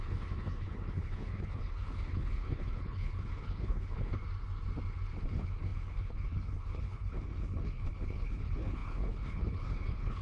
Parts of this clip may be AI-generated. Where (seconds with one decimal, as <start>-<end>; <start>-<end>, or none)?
0.0-4.2; 5.2-10.2